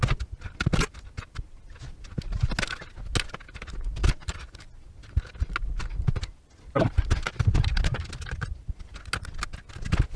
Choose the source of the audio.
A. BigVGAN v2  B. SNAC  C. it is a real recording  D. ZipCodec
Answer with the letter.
C